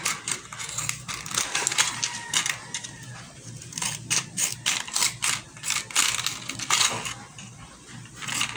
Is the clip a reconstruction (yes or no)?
no